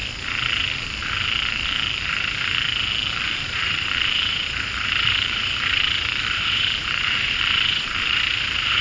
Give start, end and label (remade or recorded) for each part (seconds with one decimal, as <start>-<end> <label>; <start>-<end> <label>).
0.0-3.2 recorded; 3.2-8.8 remade